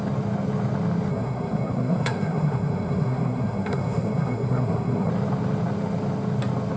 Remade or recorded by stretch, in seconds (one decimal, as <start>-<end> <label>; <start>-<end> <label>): 0.0-1.1 recorded; 1.1-5.1 remade; 5.1-6.8 recorded